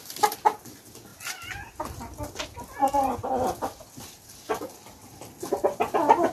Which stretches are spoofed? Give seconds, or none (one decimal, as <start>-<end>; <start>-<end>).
none